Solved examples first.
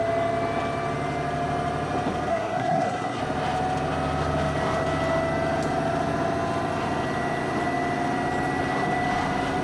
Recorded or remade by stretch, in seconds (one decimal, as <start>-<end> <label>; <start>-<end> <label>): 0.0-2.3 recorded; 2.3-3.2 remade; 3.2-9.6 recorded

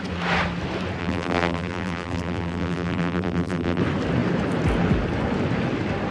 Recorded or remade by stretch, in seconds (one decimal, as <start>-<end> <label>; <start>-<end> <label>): 0.0-1.0 recorded; 1.0-3.8 remade; 3.8-6.1 recorded

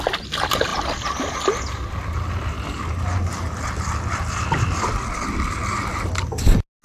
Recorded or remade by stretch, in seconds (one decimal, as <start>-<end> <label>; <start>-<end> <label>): 0.0-6.8 recorded

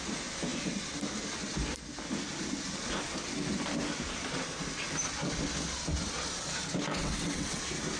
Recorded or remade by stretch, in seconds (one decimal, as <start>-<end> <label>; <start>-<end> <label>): 0.0-6.9 recorded; 6.9-7.6 remade; 7.6-8.0 recorded